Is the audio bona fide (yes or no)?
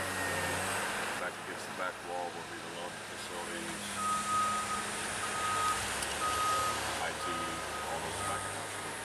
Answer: yes